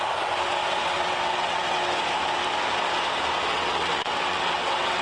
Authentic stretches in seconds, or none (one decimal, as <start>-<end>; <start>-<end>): 0.0-0.8; 1.8-3.5